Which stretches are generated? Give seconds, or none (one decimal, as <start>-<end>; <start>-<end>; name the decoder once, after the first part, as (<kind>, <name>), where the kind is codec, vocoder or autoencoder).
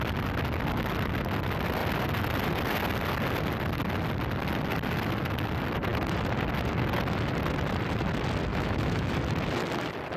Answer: 8.5-9.1 (autoencoder, DAC-VAE)